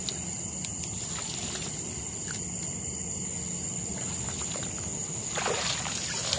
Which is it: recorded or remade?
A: recorded